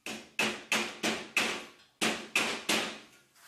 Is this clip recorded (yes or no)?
yes